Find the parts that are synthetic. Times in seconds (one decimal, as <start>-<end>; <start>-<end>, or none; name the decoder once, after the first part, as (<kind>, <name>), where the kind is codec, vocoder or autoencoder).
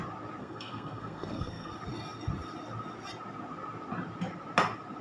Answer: 0.4-1.7 (codec, SNAC)